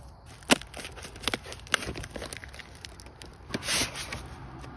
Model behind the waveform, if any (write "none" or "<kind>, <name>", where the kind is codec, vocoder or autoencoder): none